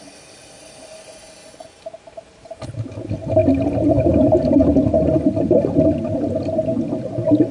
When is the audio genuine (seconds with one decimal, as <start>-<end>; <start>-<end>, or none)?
0.0-7.5